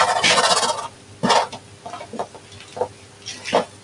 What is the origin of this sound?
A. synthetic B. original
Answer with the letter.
B